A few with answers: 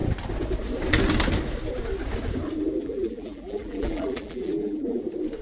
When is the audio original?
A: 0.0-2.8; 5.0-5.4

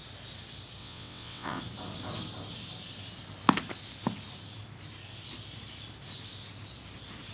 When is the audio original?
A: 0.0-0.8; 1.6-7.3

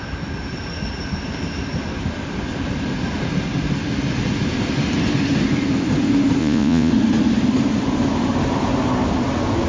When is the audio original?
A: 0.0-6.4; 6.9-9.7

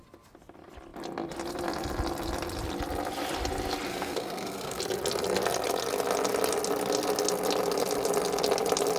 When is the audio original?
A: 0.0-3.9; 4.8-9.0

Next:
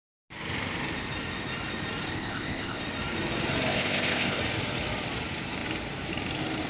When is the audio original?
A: 0.0-2.1; 2.8-3.7; 4.4-6.7

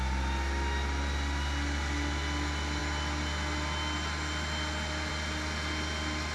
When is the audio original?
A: 0.0-6.3